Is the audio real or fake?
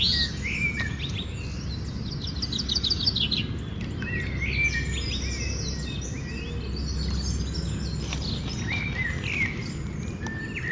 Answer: real